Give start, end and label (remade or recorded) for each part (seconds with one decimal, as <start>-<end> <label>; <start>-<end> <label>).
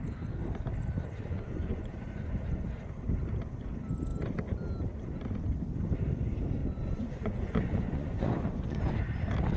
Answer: 0.0-1.2 recorded; 1.2-2.7 remade; 2.7-6.6 recorded; 6.6-8.9 remade; 8.9-9.6 recorded